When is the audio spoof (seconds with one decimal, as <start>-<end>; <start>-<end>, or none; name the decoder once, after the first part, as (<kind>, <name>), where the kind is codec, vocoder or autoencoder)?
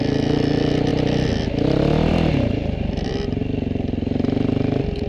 none